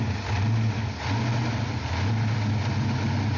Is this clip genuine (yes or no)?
yes